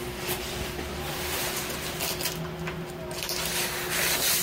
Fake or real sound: real